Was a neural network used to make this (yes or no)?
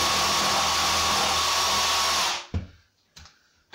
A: no